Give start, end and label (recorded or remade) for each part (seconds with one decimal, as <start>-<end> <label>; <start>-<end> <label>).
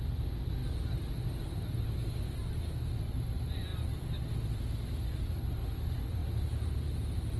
0.0-7.4 recorded